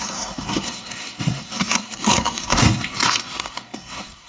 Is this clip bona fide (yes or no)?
no